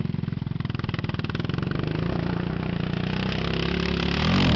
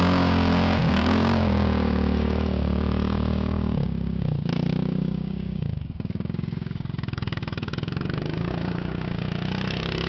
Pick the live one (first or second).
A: first